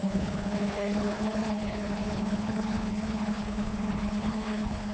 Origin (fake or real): fake